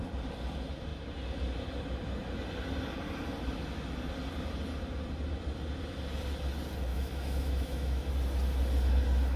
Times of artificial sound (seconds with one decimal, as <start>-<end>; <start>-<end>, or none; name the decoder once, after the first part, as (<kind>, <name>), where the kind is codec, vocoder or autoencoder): 6.9-8.1 (autoencoder, DAC-VAE)